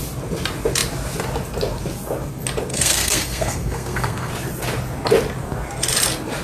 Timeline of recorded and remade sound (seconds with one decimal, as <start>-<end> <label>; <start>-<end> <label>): 0.0-2.7 recorded; 2.7-4.3 remade; 4.3-6.4 recorded